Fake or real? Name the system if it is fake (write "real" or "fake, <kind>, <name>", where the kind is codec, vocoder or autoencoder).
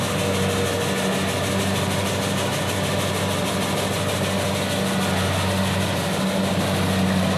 real